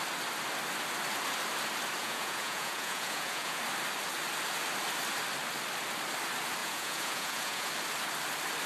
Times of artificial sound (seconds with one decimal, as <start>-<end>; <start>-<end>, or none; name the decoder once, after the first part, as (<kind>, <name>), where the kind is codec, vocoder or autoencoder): 2.0-3.6 (vocoder, Vocos); 6.6-7.7